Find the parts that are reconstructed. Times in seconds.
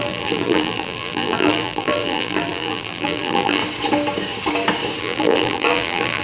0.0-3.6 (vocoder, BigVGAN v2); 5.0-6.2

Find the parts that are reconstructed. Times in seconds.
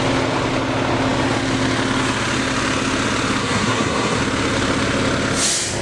3.4-4.2 (codec, SNAC)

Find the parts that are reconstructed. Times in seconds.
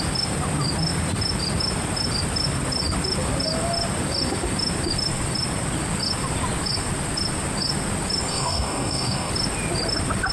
8.3-9.3 (codec, DAC)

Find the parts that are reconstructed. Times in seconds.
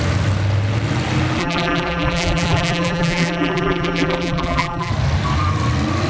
1.4-4.9 (vocoder, BigVGAN v2)